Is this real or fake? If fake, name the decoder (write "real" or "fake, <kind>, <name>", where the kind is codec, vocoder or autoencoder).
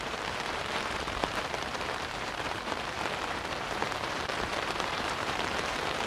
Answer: fake, vocoder, BigVGAN v2